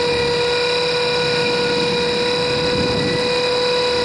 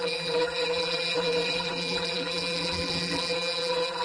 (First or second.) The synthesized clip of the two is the second